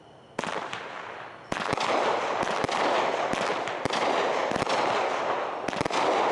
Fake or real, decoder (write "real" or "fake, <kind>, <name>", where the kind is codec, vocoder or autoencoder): real